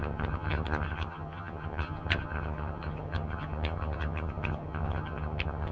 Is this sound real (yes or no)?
no